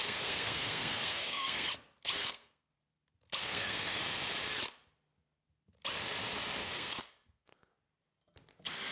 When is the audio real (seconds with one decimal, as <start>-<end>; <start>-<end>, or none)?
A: 1.7-2.2; 2.7-3.4; 4.0-6.6; 7.7-8.9